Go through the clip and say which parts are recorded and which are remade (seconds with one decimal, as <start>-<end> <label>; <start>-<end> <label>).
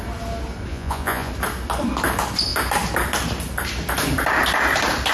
0.0-0.7 recorded; 0.7-1.3 remade; 1.3-5.1 recorded